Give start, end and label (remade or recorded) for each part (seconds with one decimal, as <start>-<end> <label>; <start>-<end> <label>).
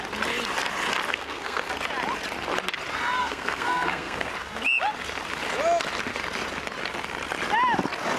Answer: 0.0-1.1 recorded; 1.1-1.7 remade; 1.7-3.2 recorded; 3.2-4.3 remade; 4.3-8.2 recorded